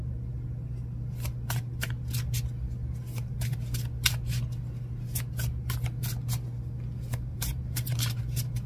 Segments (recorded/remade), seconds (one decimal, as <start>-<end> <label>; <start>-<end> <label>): 0.0-7.3 recorded; 7.3-8.2 remade; 8.2-8.7 recorded